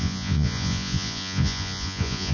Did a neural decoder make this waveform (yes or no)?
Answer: yes